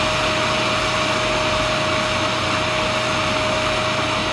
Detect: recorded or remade recorded